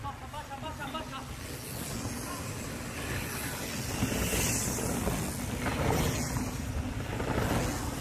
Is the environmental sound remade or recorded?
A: recorded